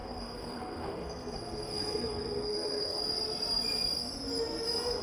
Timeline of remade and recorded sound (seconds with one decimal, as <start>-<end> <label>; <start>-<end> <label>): 0.0-3.0 remade; 3.0-5.0 recorded